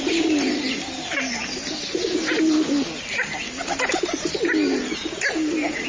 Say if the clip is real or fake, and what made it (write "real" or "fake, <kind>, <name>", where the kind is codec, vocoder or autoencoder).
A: real